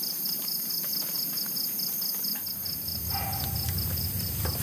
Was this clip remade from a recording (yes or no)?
no